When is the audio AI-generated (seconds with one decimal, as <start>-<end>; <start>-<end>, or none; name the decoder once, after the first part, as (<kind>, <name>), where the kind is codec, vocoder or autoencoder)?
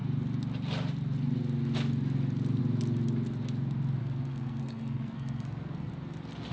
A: 4.0-5.9 (codec, SNAC)